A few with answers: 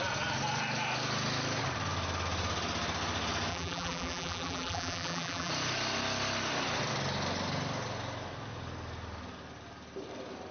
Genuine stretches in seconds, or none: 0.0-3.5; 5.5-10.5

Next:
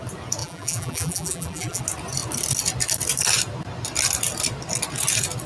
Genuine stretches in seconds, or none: 0.0-0.4; 1.8-5.5

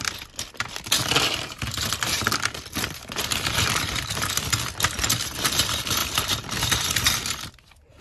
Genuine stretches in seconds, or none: 0.0-1.0; 4.4-6.0; 7.0-8.0

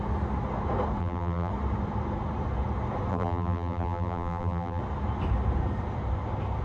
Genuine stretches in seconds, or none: 0.0-1.0; 1.5-3.1; 4.8-6.6

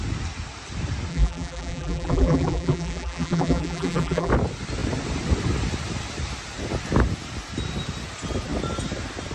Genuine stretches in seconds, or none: 0.0-1.1; 4.3-9.3